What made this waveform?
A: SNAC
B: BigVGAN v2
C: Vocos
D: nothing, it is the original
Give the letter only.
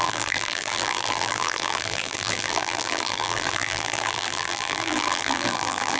B